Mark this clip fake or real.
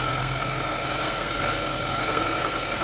fake